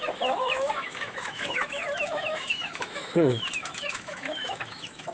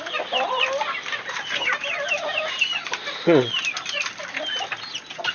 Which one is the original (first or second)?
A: second